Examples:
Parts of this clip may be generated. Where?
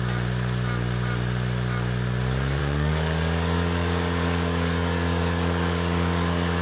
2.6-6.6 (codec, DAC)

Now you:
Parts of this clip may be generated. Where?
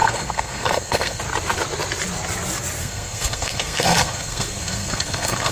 0.0-1.2 (codec, SNAC); 2.8-5.5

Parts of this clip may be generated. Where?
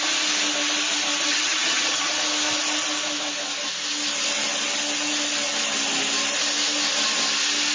1.3-2.1 (vocoder, HiFi-GAN)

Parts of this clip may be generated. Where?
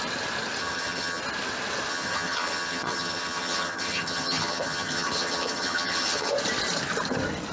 0.6-1.2 (vocoder, HiFi-GAN); 1.9-6.3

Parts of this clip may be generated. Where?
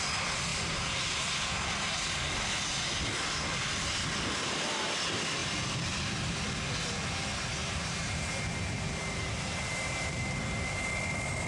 0.5-1.4 (vocoder, BigVGAN v2); 7.6-10.8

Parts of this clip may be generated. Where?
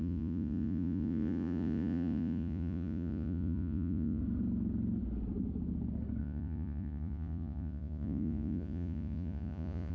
0.0-4.2 (vocoder, Vocos); 6.2-9.9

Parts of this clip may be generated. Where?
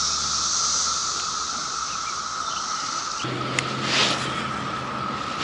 1.0-1.7 (vocoder, BigVGAN v2)